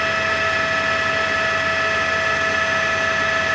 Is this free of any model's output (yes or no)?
yes